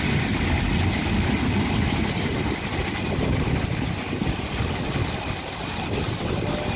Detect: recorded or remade recorded